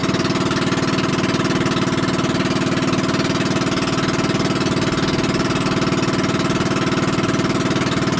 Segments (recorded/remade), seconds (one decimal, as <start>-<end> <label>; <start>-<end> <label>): 0.0-8.2 recorded

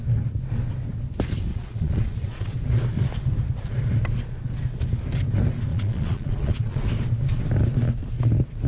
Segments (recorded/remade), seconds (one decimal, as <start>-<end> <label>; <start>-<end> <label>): 0.0-1.5 recorded; 1.5-2.5 remade; 2.5-5.7 recorded; 5.7-6.9 remade; 6.9-8.7 recorded

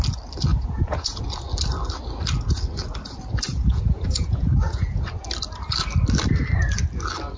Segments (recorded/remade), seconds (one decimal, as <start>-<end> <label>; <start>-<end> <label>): 0.0-0.5 recorded; 0.5-1.2 remade; 1.2-3.5 recorded; 3.5-5.1 remade; 5.1-7.4 recorded

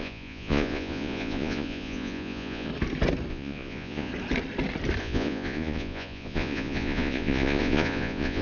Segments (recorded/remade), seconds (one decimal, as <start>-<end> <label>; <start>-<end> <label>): 0.0-2.7 remade; 2.7-3.3 recorded; 3.3-4.1 remade; 4.1-5.0 recorded; 5.0-8.4 remade

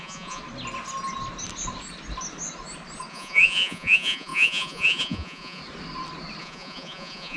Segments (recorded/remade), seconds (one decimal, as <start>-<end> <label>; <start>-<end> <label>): 0.0-0.4 remade; 0.4-3.1 recorded; 3.1-5.6 remade; 5.6-6.4 recorded; 6.4-7.4 remade